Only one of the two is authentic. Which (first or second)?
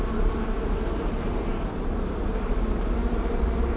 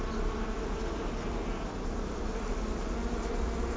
second